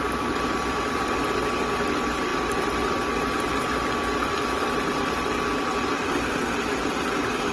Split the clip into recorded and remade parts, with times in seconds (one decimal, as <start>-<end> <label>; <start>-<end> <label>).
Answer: 0.0-7.5 recorded